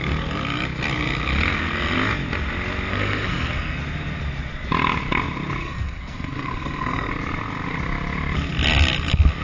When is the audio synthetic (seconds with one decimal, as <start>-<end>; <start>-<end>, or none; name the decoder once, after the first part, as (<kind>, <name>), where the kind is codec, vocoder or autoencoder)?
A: 2.9-3.8 (codec, SNAC); 5.6-7.1